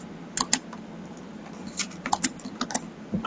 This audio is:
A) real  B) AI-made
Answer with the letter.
A